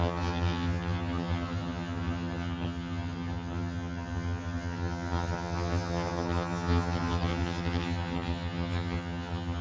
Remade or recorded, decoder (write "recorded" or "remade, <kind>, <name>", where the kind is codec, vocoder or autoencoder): remade, vocoder, HiFi-GAN